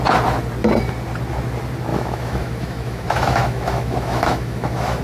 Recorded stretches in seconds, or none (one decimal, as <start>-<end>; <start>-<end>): 0.0-1.9